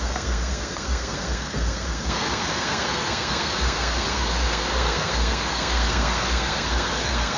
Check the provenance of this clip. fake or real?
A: fake